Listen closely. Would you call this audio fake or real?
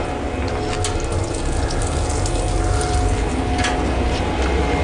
real